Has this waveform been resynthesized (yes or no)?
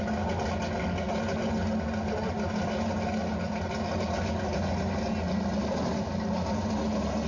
no